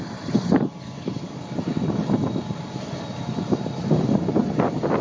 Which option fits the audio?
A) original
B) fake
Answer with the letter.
A